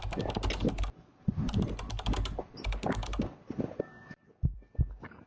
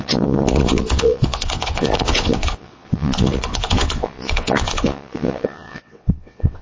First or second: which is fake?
second